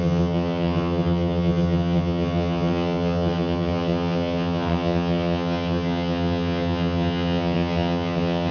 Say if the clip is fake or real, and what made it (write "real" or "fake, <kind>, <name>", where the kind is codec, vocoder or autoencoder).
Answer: fake, vocoder, HiFi-GAN